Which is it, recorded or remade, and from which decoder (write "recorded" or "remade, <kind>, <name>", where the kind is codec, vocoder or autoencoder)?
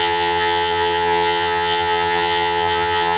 remade, vocoder, HiFi-GAN